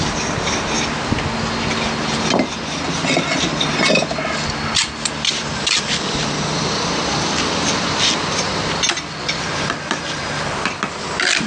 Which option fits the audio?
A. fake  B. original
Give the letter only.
B